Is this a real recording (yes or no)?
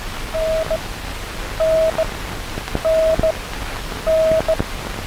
yes